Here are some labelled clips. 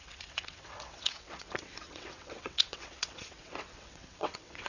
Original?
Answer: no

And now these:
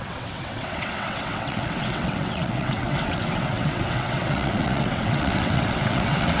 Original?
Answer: no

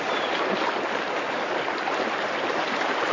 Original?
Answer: yes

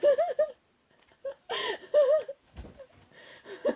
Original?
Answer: yes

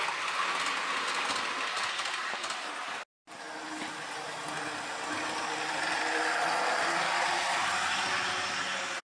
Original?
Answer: yes